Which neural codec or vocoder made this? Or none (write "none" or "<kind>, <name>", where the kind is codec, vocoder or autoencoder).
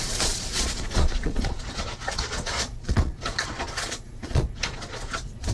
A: vocoder, Vocos